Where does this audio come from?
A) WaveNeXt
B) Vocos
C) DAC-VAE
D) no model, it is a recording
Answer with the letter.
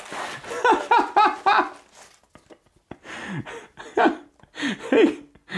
D